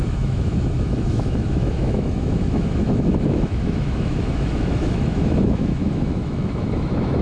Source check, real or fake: fake